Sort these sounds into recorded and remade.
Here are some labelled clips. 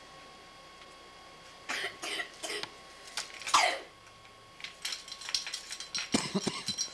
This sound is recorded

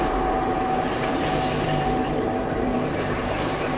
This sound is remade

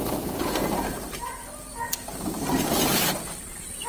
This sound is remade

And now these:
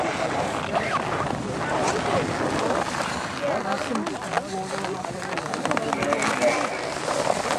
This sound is recorded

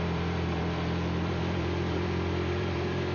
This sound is remade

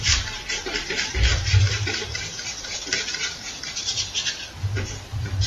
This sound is remade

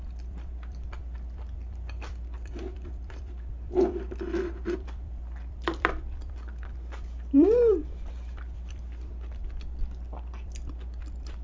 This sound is remade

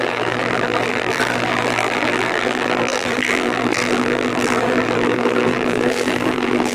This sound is remade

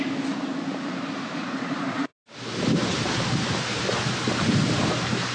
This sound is remade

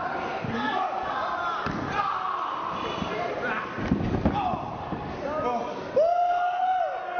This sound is recorded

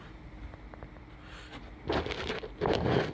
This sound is recorded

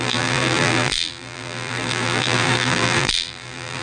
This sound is remade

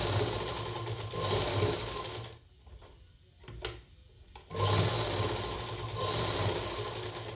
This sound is recorded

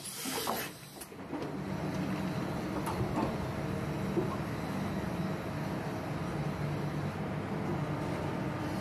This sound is recorded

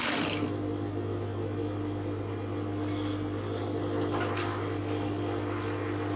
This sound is recorded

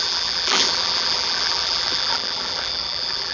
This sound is remade